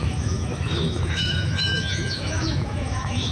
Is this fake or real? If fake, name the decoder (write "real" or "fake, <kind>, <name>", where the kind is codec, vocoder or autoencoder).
fake, autoencoder, DAC-VAE